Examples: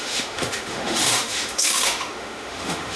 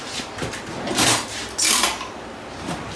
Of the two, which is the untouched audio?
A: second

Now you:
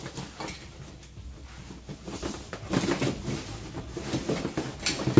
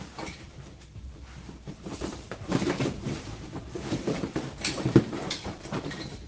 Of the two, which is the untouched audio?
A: first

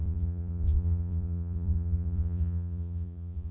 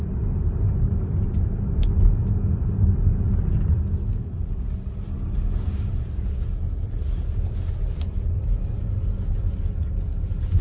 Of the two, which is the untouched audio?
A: second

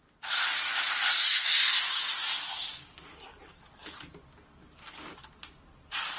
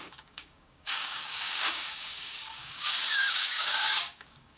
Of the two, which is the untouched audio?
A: first